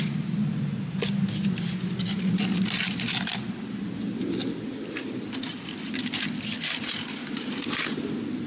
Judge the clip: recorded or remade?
recorded